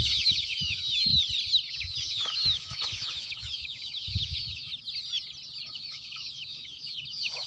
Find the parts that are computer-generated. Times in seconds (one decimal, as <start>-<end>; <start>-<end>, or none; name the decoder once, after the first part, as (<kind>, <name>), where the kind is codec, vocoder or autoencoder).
0.0-1.1 (autoencoder, DAC-VAE); 1.7-4.7; 5.7-7.5